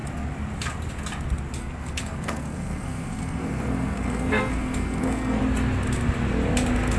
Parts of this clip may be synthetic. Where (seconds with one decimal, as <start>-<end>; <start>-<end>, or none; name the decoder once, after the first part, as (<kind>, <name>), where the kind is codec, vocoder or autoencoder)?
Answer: 1.6-5.4 (codec, SNAC)

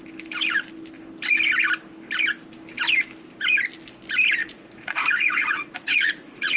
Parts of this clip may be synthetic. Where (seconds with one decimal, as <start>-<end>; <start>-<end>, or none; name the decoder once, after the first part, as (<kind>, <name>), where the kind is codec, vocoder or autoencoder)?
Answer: 4.4-6.6 (vocoder, Vocos)

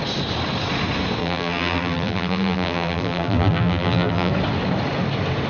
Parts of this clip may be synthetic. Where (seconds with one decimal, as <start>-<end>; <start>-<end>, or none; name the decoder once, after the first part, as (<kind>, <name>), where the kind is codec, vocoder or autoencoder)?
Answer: 1.2-4.3 (vocoder, BigVGAN v2)

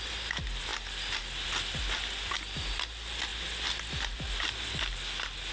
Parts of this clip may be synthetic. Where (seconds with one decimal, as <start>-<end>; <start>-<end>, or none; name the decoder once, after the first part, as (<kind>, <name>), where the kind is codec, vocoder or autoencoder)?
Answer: none

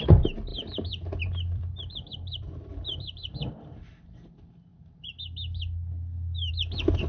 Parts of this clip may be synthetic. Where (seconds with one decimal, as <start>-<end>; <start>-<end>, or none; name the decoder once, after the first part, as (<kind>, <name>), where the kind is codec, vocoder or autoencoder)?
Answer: 0.5-3.8 (vocoder, BigVGAN v2)

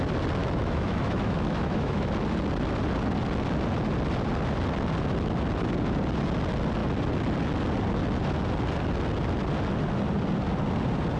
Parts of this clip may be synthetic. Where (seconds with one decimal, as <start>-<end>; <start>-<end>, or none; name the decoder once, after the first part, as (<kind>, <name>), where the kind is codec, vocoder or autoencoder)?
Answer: 0.4-2.1 (autoencoder, DAC-VAE)

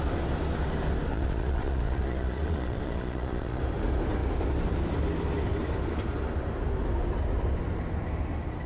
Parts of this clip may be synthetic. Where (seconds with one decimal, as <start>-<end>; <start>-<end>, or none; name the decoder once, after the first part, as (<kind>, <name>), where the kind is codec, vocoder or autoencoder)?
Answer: 1.1-3.6 (vocoder, Vocos)

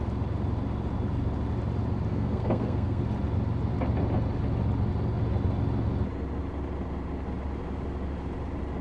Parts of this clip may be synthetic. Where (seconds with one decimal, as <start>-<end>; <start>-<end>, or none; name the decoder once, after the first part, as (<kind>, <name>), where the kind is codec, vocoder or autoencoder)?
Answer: 2.1-3.0 (codec, SNAC)